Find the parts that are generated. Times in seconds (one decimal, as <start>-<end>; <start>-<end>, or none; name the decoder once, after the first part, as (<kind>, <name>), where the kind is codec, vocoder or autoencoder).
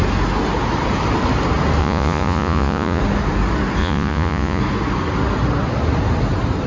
1.8-3.0 (vocoder, Vocos); 3.8-4.6